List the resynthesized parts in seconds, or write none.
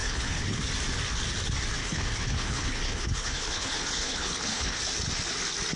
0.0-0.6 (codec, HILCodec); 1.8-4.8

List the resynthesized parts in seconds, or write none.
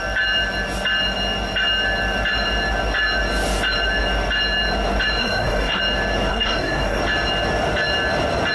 5.2-5.8 (codec, SNAC); 6.3-7.0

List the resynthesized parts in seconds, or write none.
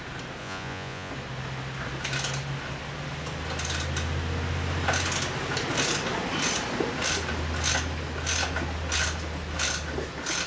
0.4-1.1 (vocoder, Vocos)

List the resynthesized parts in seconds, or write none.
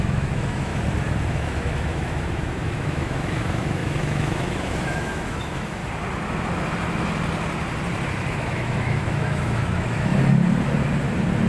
0.0-0.7 (autoencoder, DAC-VAE); 1.3-5.8; 8.3-10.1